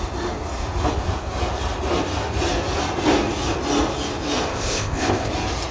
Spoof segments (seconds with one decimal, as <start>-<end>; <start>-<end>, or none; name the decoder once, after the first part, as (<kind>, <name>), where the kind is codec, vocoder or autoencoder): 4.5-5.3 (codec, ZipCodec)